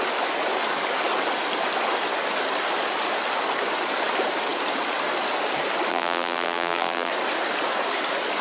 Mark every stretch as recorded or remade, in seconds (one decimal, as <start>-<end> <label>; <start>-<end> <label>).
0.0-5.9 recorded; 5.9-7.1 remade; 7.1-8.4 recorded